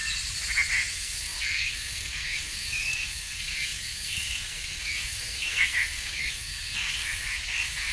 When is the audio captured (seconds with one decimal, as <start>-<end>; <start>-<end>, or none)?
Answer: 0.0-0.9